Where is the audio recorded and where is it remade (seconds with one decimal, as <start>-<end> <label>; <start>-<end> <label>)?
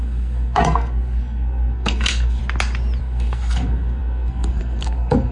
0.0-2.4 remade; 2.4-3.0 recorded; 3.0-5.3 remade